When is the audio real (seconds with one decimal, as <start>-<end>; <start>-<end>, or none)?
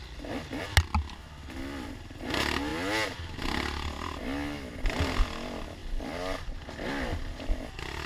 0.0-8.1